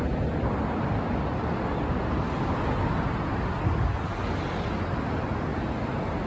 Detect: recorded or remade recorded